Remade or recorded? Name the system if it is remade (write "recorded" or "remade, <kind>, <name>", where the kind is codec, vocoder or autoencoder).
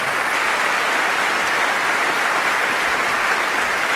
remade, vocoder, BigVGAN v2